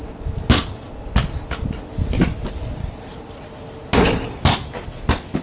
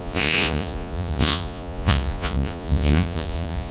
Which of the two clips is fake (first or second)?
second